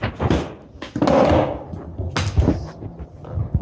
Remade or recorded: recorded